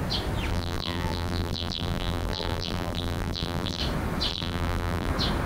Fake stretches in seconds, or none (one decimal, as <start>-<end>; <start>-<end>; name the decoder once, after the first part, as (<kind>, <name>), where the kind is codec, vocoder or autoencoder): 0.5-3.8 (vocoder, BigVGAN v2); 4.3-5.1